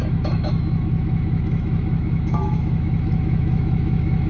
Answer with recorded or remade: remade